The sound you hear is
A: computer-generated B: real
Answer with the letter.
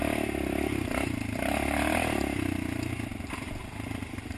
B